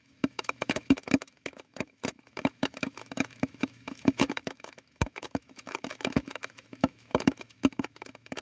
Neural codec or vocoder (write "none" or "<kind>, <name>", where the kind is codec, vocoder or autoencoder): autoencoder, DAC-VAE